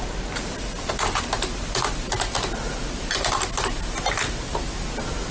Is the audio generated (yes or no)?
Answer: no